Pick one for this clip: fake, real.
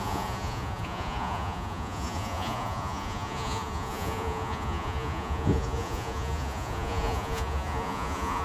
fake